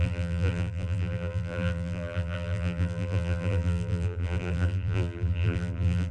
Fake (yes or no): yes